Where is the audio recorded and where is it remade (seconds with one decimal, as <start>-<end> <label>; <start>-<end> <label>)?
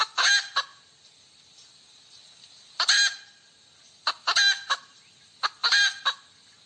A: 0.0-5.6 recorded; 5.6-6.2 remade; 6.2-6.7 recorded